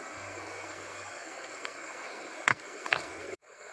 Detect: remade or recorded remade